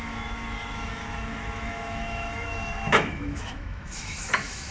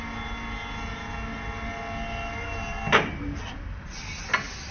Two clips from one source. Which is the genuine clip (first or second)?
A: second